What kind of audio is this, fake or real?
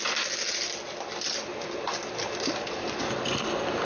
real